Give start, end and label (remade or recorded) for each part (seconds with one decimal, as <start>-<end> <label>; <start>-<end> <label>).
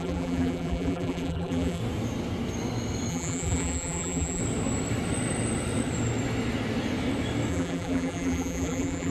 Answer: 0.0-1.8 remade; 1.8-3.1 recorded; 3.1-4.4 remade; 4.4-7.5 recorded; 7.5-9.1 remade